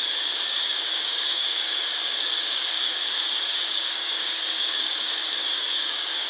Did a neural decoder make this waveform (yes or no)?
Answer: yes